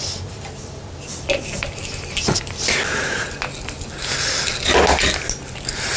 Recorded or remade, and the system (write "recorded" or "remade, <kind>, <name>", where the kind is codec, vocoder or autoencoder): recorded